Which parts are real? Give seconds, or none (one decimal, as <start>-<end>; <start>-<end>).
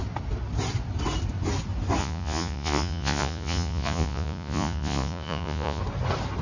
0.0-2.0; 5.8-6.4